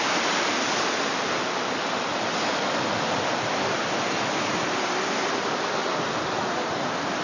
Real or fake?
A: real